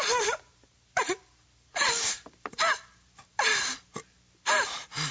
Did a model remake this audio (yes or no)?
yes